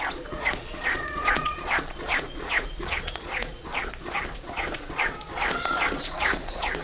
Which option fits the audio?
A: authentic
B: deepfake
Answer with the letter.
B